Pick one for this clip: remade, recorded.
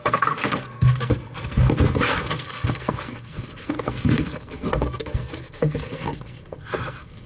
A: remade